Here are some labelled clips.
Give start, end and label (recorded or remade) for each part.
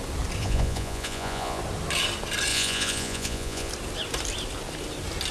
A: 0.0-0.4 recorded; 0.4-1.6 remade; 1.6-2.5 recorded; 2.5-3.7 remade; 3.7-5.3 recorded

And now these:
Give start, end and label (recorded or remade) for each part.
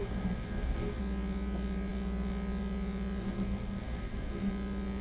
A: 0.0-1.0 remade; 1.0-3.2 recorded; 3.2-4.5 remade; 4.5-5.0 recorded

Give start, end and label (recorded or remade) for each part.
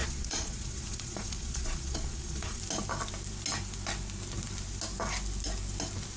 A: 0.0-2.6 remade; 2.6-6.2 recorded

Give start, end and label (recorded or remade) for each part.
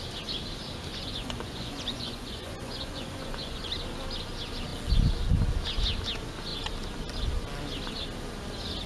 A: 0.0-0.9 recorded; 0.9-3.7 remade; 3.7-8.9 recorded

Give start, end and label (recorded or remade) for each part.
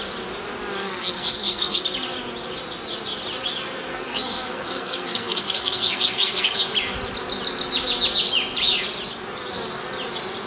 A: 0.0-0.8 recorded; 0.8-1.8 remade; 1.8-3.9 recorded; 3.9-6.6 remade; 6.6-10.5 recorded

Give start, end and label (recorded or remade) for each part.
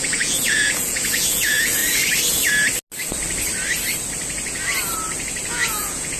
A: 0.0-1.8 remade; 1.8-5.5 recorded; 5.5-6.2 remade